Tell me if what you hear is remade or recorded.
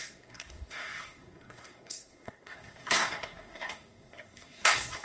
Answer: remade